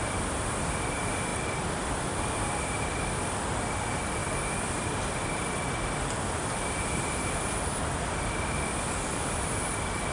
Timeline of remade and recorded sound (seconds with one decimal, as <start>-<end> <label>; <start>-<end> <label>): 0.0-10.1 recorded